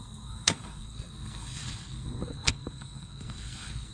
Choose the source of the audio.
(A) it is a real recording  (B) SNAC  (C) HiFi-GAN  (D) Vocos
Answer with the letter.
B